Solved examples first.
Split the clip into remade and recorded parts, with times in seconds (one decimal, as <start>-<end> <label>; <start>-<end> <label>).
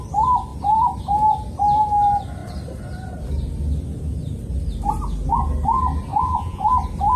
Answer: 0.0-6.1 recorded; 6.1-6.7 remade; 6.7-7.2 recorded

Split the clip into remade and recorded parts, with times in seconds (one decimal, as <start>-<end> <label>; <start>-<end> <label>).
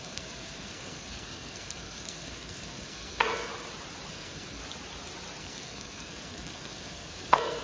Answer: 0.0-3.5 remade; 3.5-4.1 recorded; 4.1-4.6 remade; 4.6-5.4 recorded; 5.4-7.6 remade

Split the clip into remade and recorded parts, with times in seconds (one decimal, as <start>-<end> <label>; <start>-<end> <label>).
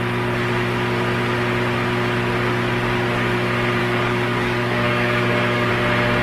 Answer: 0.0-3.8 recorded; 3.8-5.7 remade; 5.7-6.2 recorded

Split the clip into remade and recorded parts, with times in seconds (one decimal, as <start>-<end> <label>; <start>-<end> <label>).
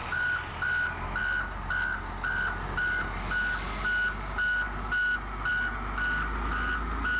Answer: 0.0-7.2 recorded